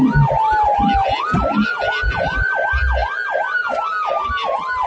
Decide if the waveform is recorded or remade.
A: recorded